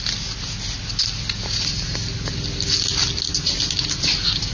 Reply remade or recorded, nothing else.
recorded